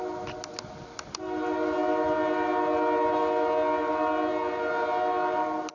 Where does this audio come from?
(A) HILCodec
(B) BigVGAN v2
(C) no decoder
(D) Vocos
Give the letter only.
C